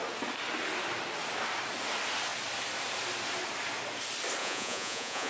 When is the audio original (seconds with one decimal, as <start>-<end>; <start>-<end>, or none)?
0.0-4.4